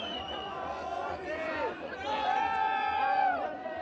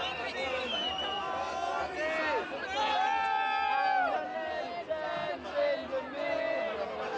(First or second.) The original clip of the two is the second